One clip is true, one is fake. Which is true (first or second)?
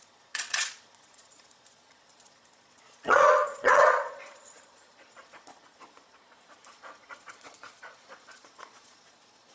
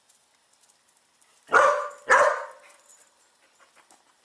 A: second